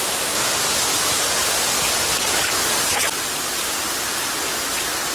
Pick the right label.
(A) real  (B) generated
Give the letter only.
A